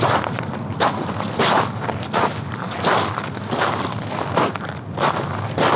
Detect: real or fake real